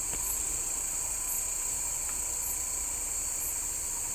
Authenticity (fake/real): real